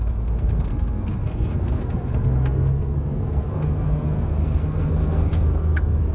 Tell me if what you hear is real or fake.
fake